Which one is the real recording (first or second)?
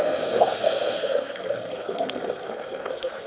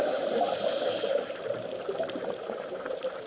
second